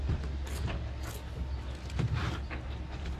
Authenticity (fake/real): real